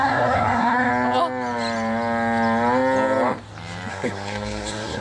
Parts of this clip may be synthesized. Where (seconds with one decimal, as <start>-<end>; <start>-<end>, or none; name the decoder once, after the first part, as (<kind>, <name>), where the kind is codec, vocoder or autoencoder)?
0.0-0.9 (codec, SNAC); 3.9-5.0